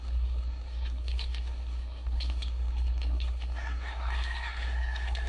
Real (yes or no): no